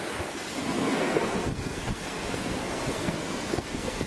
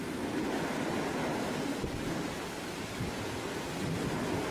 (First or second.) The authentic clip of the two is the second